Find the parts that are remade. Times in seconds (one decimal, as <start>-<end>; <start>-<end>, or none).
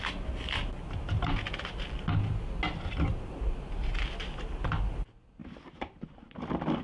5.4-6.0